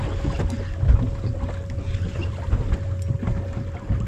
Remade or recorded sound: recorded